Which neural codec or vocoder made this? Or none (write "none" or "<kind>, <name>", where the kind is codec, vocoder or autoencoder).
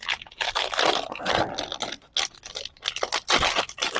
none